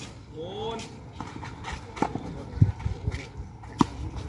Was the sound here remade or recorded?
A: recorded